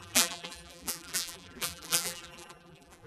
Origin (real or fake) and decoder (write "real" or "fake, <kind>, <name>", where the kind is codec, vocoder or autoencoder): fake, vocoder, BigVGAN v2